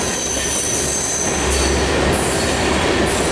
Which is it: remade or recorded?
recorded